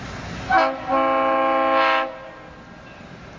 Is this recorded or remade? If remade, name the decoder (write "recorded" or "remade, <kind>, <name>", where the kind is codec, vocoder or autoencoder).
recorded